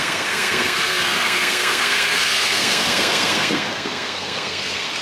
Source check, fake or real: fake